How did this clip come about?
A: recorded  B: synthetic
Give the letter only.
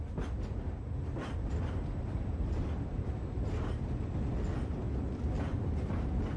A